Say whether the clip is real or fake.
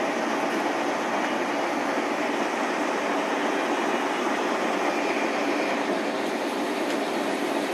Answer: real